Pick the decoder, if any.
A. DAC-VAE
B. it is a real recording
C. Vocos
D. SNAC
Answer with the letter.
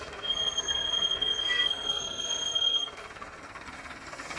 D